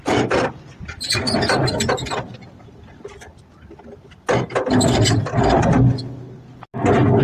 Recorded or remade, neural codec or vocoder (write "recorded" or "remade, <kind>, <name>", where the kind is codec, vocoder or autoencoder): recorded